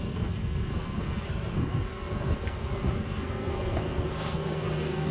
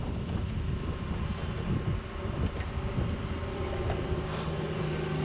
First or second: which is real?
second